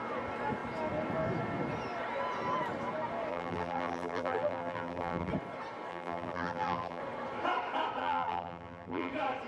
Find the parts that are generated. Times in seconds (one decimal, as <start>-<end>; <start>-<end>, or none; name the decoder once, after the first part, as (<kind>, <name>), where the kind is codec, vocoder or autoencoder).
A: 3.3-5.3 (vocoder, BigVGAN v2); 5.9-7.0; 8.0-9.1